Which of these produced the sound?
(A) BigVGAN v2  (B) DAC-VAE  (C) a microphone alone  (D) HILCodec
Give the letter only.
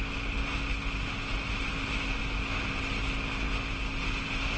C